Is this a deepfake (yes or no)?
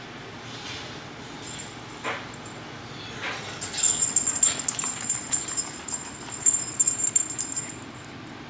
no